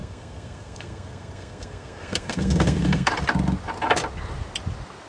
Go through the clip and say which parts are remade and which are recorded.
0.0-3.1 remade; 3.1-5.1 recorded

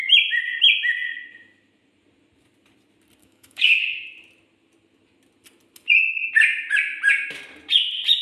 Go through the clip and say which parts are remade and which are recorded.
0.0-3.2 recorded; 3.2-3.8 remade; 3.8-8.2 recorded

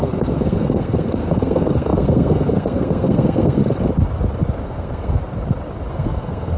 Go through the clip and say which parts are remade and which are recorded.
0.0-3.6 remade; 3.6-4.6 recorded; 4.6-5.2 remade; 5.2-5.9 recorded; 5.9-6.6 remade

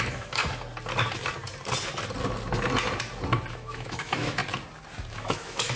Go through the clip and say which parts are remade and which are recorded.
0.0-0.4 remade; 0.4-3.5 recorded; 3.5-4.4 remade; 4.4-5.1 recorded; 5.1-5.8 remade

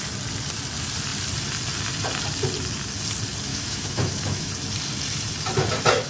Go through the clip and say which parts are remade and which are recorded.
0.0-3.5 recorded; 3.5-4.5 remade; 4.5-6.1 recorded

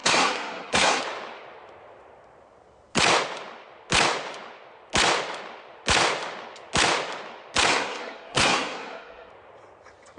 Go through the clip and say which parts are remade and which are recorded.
0.0-1.0 remade; 1.0-7.7 recorded; 7.7-9.3 remade; 9.3-10.2 recorded

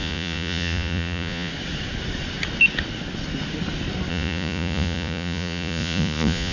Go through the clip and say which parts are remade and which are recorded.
0.0-1.5 remade; 1.5-4.1 recorded; 4.1-6.5 remade